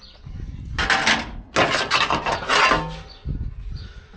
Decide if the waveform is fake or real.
real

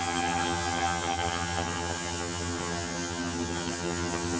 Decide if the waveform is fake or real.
fake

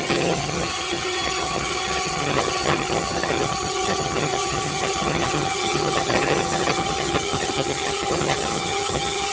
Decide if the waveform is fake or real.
fake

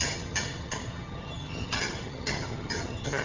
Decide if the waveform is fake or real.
fake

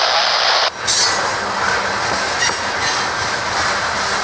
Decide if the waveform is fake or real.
real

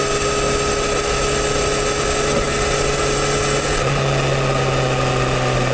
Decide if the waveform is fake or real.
real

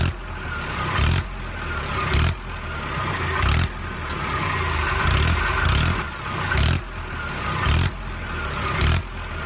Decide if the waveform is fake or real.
real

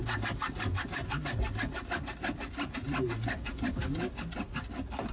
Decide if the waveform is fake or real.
real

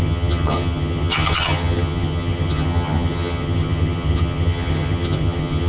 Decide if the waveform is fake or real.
fake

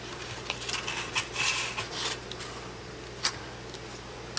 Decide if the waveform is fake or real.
real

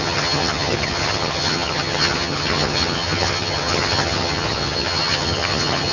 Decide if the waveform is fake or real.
fake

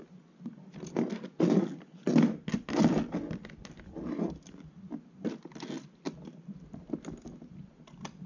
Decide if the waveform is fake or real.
real